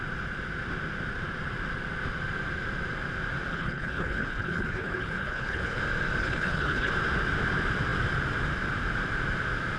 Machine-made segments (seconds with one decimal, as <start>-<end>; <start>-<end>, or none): 3.5-5.8; 6.2-6.9